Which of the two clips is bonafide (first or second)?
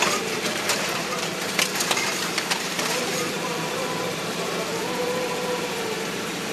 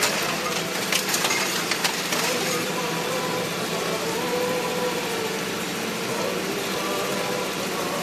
second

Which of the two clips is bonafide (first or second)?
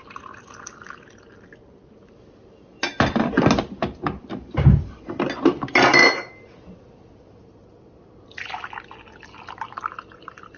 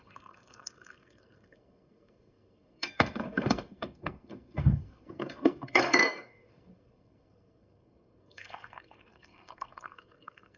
first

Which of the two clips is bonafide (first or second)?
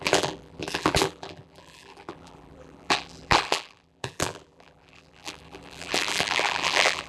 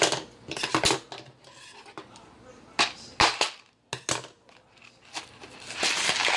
second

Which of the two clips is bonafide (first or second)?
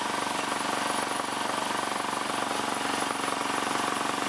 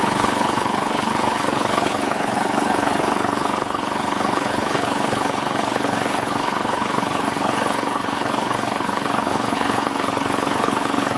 first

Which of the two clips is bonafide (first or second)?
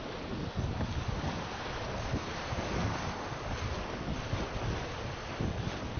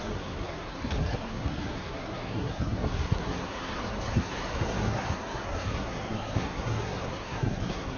first